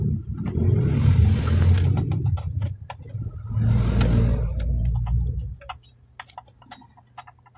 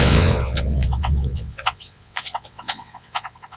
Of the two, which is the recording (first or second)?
first